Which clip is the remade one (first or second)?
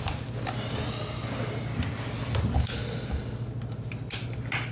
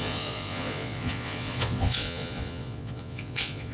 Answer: second